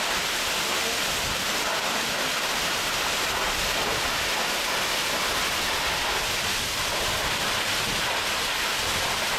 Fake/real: real